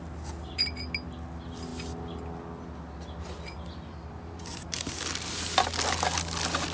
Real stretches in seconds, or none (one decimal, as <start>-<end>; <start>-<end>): 0.0-6.7